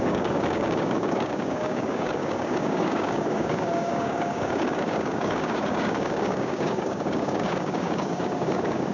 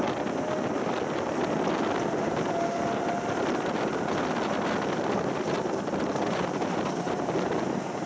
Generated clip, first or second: first